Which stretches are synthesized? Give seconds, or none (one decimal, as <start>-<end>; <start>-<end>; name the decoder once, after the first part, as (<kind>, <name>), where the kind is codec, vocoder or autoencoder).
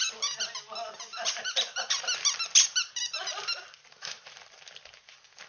1.1-2.0 (vocoder, BigVGAN v2); 2.8-4.5